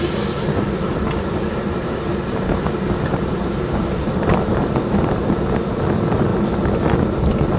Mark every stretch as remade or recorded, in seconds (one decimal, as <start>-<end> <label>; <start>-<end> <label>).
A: 0.0-0.9 recorded; 0.9-5.2 remade; 5.2-7.6 recorded